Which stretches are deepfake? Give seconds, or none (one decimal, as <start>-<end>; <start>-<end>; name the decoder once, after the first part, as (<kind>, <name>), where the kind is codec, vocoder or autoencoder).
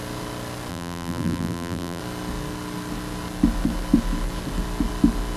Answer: 0.7-2.0 (vocoder, BigVGAN v2)